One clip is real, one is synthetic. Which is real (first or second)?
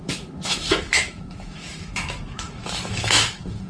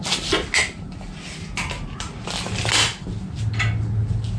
second